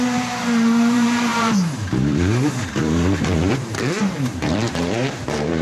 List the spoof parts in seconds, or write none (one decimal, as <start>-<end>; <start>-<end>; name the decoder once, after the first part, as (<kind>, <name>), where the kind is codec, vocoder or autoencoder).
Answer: 0.0-5.6 (vocoder, BigVGAN v2)